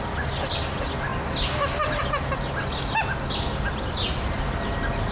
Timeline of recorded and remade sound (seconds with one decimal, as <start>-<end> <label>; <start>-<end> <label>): 0.0-5.1 recorded